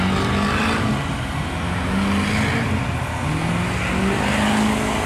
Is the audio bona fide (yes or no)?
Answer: yes